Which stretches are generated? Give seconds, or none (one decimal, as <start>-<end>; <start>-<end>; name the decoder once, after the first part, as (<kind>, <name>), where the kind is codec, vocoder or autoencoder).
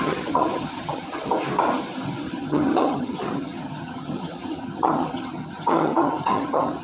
0.0-1.3 (vocoder, HiFi-GAN); 2.4-6.8